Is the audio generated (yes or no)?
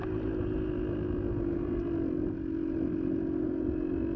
no